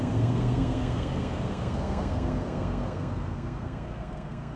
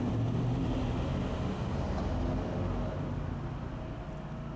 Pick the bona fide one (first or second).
second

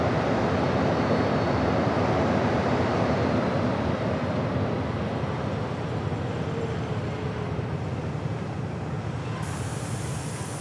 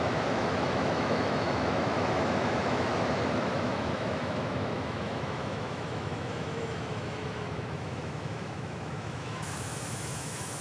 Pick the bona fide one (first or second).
first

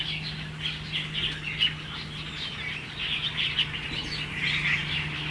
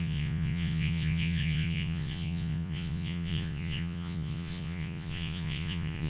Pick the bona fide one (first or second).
first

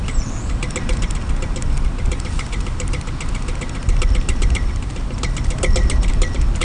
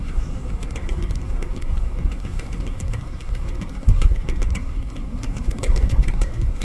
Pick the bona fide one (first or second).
first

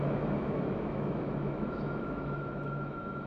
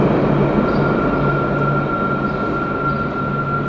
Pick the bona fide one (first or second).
second